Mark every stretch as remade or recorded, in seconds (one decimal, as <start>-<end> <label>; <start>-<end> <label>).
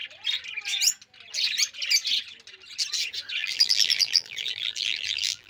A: 0.0-3.4 recorded; 3.4-5.5 remade